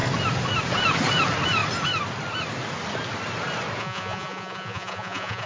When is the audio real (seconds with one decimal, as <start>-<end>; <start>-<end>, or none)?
0.0-3.8